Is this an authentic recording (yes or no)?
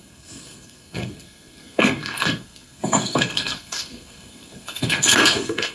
no